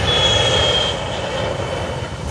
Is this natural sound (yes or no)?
yes